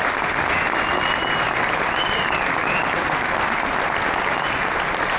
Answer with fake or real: real